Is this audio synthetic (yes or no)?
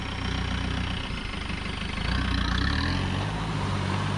no